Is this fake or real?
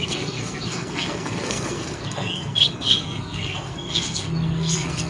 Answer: fake